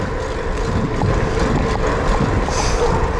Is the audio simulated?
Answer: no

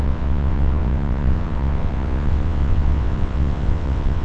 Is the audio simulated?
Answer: yes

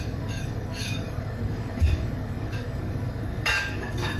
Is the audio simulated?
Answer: yes